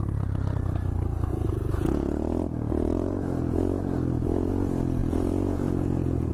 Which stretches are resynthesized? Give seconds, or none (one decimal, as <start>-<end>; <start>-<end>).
1.3-4.5; 5.0-6.3